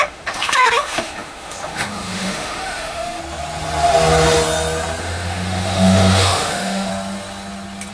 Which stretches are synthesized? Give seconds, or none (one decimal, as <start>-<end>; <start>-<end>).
0.0-3.2; 5.0-6.9